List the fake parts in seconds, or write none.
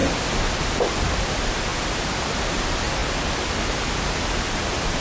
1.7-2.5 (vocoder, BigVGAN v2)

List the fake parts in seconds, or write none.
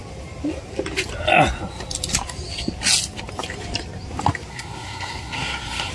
4.5-5.9 (codec, SNAC)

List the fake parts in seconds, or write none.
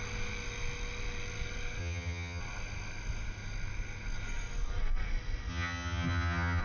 1.8-2.4 (vocoder, HiFi-GAN); 5.5-6.6